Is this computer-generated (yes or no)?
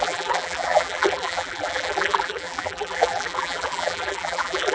yes